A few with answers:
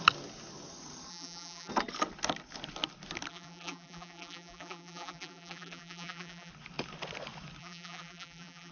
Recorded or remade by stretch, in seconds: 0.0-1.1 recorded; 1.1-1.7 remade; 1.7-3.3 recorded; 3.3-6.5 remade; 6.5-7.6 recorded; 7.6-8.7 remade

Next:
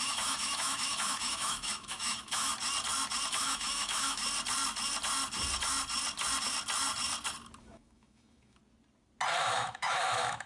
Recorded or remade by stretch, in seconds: 0.0-2.5 remade; 2.5-3.3 recorded; 3.3-4.2 remade; 4.2-7.6 recorded; 7.6-8.6 remade; 8.6-9.4 recorded; 9.4-10.5 remade

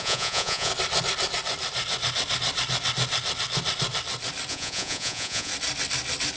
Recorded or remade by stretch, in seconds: 0.0-0.7 remade; 0.7-4.5 recorded; 4.5-5.5 remade; 5.5-6.4 recorded

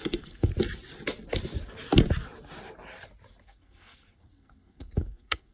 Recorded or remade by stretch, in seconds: 0.0-0.5 remade; 0.5-3.4 recorded; 3.4-5.5 remade

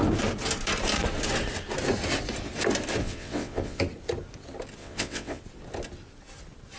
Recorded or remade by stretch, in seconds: 0.0-3.0 recorded; 3.0-3.8 remade; 3.8-4.8 recorded; 4.8-5.4 remade; 5.4-6.8 recorded

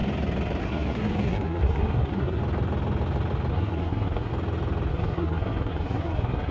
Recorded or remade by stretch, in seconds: 0.0-0.6 recorded; 0.6-2.4 remade; 2.4-3.5 recorded; 3.5-4.3 remade; 4.3-4.9 recorded; 4.9-6.5 remade

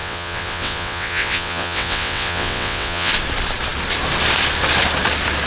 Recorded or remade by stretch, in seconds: 0.0-3.1 remade; 3.1-5.5 recorded